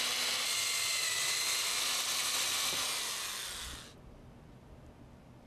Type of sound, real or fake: real